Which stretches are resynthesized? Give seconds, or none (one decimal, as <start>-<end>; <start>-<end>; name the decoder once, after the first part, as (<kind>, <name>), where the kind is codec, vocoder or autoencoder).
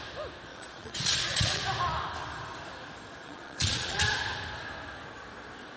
0.5-1.6 (vocoder, Vocos); 3.2-4.0